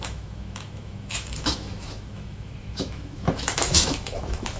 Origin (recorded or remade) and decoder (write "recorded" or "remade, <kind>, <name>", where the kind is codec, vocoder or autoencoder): remade, autoencoder, DAC-VAE